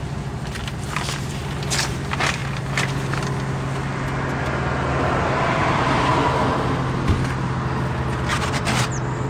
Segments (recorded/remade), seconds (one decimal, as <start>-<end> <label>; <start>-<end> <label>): 0.0-1.4 remade; 1.4-1.9 recorded; 1.9-2.4 remade; 2.4-5.1 recorded; 5.1-6.1 remade; 6.1-8.3 recorded; 8.3-9.3 remade